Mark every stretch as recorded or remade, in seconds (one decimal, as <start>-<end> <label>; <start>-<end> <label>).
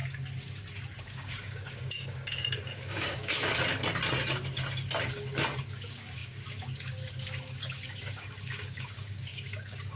0.0-1.0 recorded; 1.0-3.5 remade; 3.5-5.6 recorded; 5.6-10.0 remade